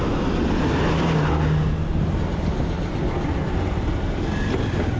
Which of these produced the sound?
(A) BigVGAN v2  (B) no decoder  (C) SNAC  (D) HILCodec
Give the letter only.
B